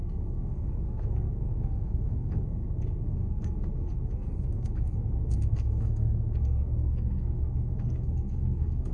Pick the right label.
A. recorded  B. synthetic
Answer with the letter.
B